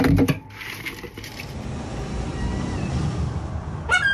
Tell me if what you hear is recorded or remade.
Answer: recorded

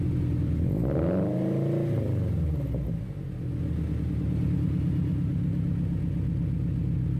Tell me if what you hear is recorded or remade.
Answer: recorded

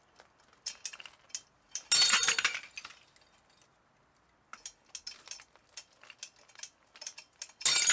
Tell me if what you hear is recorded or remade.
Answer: recorded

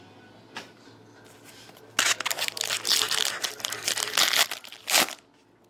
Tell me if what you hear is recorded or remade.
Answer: recorded